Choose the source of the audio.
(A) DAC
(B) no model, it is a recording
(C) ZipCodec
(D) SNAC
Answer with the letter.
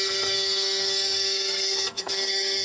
D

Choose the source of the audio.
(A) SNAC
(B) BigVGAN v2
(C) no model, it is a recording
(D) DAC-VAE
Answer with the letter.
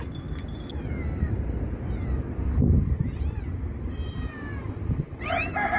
C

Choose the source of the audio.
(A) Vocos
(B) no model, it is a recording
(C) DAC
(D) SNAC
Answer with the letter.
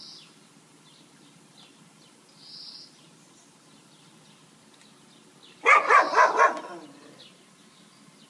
B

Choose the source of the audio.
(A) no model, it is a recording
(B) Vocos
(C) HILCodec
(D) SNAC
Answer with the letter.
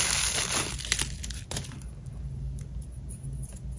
A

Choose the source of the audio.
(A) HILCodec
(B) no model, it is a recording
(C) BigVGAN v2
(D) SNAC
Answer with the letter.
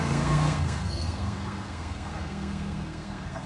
D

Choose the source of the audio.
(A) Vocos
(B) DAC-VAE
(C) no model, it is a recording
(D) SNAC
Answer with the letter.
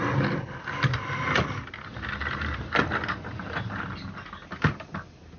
C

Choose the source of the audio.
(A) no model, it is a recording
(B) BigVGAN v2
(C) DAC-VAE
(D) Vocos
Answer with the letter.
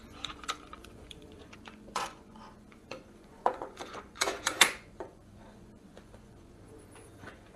D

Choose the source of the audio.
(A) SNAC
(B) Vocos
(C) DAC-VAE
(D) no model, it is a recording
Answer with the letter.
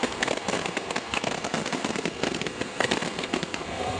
A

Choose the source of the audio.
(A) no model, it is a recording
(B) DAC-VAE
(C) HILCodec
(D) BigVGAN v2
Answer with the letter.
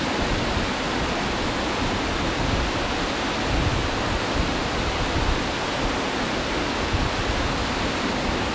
A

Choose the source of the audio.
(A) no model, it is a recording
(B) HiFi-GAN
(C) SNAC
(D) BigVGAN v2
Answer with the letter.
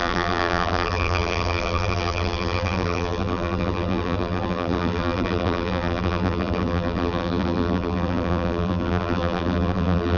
D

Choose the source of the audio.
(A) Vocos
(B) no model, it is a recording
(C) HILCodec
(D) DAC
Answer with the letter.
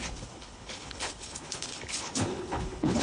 C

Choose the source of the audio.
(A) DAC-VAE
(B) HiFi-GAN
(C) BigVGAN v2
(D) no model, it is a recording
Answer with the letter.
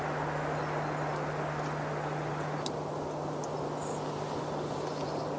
D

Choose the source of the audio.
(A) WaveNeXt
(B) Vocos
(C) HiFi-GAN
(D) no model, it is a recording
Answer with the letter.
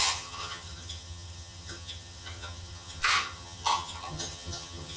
C